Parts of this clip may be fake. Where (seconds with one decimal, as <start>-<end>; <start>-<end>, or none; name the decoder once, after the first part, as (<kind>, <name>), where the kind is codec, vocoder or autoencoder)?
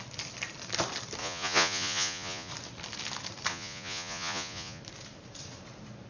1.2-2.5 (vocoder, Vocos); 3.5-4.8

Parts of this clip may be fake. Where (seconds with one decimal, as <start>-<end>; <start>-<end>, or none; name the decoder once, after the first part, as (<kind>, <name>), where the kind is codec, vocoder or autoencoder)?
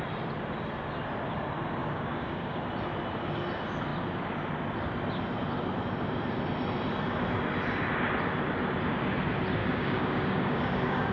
1.8-2.6 (codec, DAC); 9.6-11.1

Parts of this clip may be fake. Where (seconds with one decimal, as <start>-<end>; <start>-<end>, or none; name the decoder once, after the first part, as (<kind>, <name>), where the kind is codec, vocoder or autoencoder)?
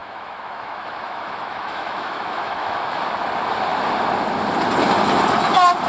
0.0-3.0 (autoencoder, DAC-VAE)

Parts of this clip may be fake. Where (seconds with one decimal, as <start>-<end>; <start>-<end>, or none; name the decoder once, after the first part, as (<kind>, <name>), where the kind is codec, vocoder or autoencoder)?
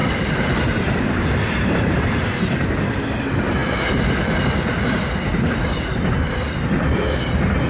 0.0-2.7 (vocoder, BigVGAN v2)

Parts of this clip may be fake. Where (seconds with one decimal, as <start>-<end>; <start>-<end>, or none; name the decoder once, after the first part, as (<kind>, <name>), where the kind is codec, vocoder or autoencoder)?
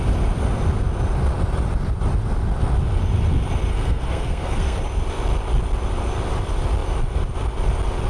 3.7-4.8 (codec, SNAC)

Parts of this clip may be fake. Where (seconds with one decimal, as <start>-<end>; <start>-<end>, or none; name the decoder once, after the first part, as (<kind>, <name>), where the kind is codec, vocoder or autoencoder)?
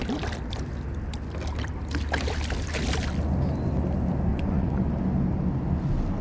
4.3-4.9 (vocoder, Vocos)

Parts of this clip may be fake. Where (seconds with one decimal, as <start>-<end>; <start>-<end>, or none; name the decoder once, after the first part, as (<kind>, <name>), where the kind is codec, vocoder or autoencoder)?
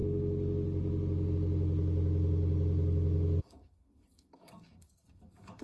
3.4-5.6 (codec, DAC)